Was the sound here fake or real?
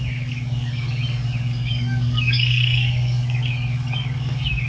fake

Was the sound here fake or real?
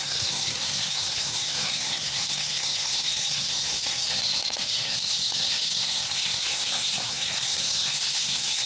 fake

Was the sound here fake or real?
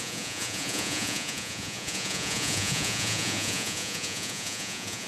fake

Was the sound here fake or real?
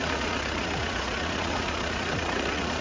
fake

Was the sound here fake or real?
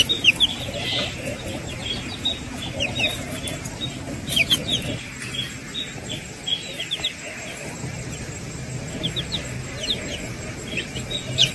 fake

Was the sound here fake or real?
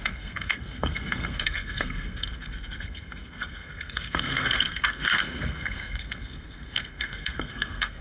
fake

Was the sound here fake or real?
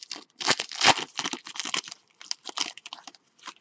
real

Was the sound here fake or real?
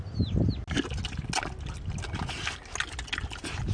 real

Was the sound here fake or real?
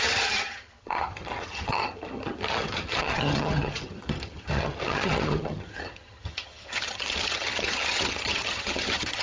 fake